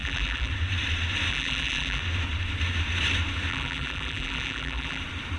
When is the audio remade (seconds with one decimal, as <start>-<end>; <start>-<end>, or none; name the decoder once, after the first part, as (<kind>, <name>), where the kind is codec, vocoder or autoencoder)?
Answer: 0.0-0.5 (vocoder, BigVGAN v2); 1.3-2.0; 3.5-5.0